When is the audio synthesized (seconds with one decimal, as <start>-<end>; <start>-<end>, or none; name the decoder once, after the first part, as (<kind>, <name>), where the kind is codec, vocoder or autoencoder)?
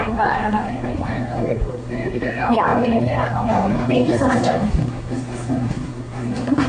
0.0-6.7 (codec, SNAC)